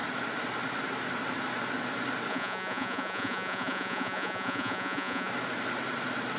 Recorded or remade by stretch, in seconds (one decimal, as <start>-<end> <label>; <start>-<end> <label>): 0.0-2.3 recorded; 2.3-5.3 remade; 5.3-6.4 recorded